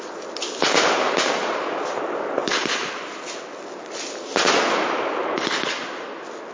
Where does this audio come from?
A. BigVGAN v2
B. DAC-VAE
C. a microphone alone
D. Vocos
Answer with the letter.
C